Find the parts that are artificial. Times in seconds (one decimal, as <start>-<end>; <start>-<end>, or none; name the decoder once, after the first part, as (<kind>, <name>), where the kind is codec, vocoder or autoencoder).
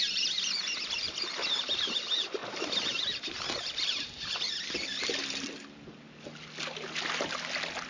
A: none